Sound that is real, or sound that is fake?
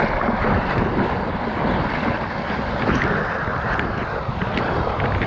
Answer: real